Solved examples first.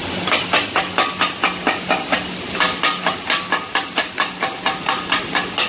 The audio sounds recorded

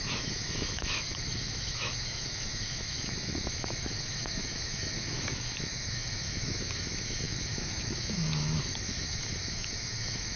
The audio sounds remade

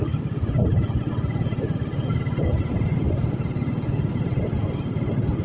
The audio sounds recorded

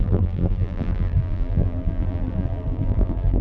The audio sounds remade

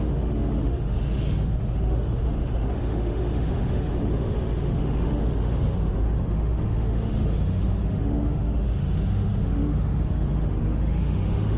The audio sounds remade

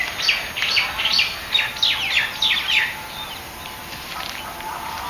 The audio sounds recorded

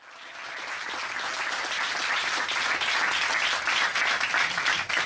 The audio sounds recorded